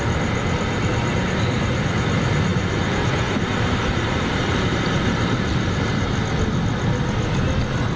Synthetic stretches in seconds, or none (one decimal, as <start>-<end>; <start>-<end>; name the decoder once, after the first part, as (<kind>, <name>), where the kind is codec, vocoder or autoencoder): 2.5-6.2 (vocoder, BigVGAN v2)